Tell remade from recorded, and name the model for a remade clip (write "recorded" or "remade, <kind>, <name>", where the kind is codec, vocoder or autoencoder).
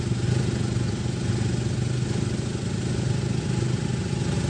recorded